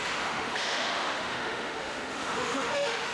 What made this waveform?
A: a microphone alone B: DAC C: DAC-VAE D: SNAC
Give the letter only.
C